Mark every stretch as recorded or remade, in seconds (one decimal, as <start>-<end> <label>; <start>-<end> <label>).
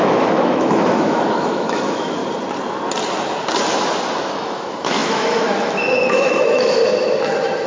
0.0-2.2 remade; 2.2-4.3 recorded; 4.3-6.8 remade; 6.8-7.7 recorded